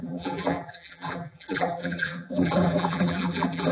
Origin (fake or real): fake